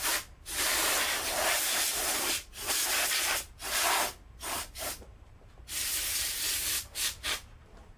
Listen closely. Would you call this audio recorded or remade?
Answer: remade